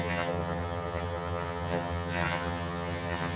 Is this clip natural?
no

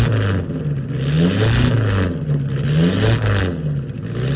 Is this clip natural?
yes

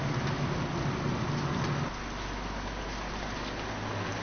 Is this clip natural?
yes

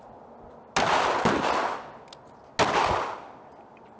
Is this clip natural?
yes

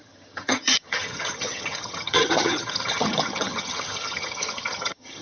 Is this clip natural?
no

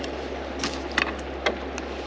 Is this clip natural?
yes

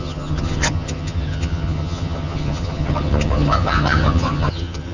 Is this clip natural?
no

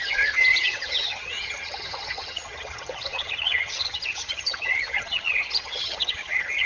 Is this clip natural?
no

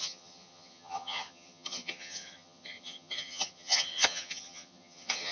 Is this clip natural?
no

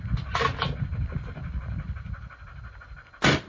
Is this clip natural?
yes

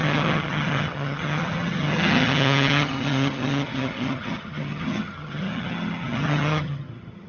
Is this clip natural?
no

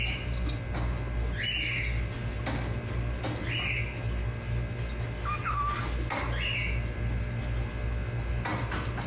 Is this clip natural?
yes